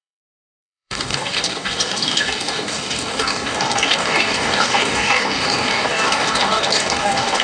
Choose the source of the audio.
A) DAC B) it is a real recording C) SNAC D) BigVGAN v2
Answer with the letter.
A